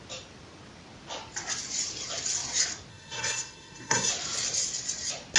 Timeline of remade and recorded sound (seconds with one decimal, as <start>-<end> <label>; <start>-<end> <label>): 0.0-2.9 recorded; 2.9-4.1 remade; 4.1-5.4 recorded